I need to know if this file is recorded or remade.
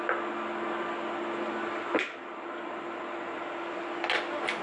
recorded